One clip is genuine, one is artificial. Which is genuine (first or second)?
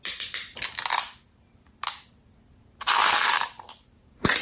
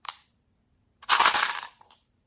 first